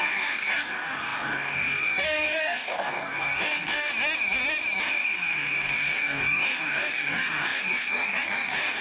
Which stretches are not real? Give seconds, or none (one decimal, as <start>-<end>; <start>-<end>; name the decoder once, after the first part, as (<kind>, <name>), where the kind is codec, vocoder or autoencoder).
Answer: 0.0-3.9 (codec, DAC); 4.8-8.8